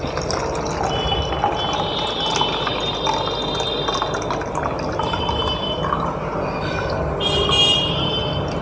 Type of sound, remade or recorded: recorded